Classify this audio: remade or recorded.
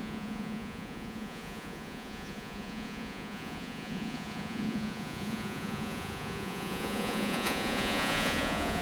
remade